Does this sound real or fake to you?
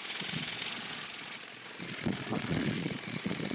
fake